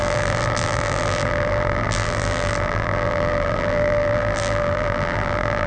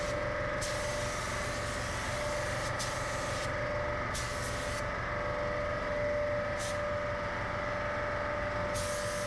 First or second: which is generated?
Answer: first